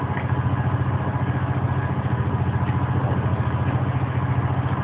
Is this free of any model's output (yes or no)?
yes